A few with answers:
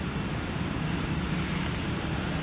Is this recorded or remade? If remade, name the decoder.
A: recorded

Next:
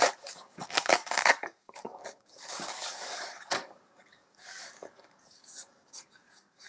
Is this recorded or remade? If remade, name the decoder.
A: remade, codec, DAC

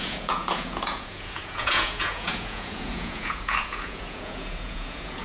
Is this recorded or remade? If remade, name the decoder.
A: remade, vocoder, Vocos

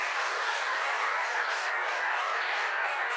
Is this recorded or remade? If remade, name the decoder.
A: remade, codec, DAC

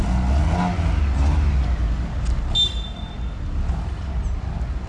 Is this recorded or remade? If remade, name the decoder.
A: recorded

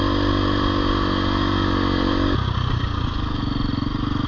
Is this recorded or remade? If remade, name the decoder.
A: recorded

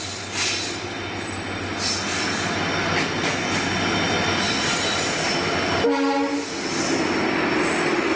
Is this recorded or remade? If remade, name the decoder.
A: recorded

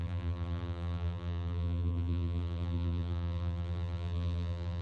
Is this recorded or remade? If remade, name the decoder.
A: remade, vocoder, BigVGAN v2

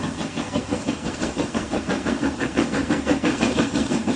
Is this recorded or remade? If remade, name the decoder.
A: remade, codec, SNAC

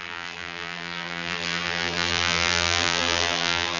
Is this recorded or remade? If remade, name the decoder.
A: remade, vocoder, BigVGAN v2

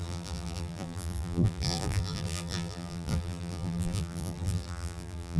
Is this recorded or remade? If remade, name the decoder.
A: remade, vocoder, BigVGAN v2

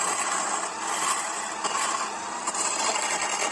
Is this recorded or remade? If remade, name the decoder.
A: recorded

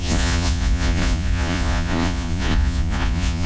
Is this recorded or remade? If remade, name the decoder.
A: remade, vocoder, Vocos